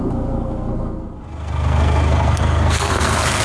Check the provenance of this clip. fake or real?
fake